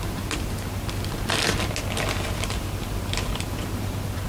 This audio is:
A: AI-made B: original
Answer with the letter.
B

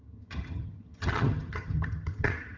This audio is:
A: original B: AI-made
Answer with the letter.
B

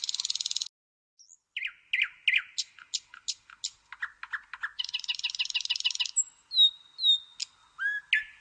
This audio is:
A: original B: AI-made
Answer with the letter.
A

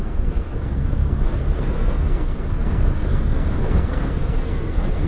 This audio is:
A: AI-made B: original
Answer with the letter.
A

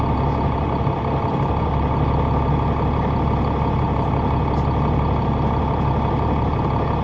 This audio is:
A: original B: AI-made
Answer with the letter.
A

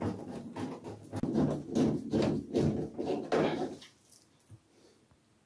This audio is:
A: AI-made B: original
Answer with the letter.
B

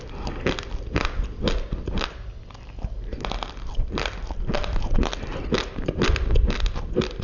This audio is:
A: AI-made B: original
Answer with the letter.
B